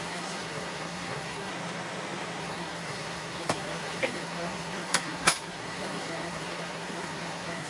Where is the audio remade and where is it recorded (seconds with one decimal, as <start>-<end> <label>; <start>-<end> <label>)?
0.0-1.5 remade; 1.5-2.4 recorded; 2.4-7.7 remade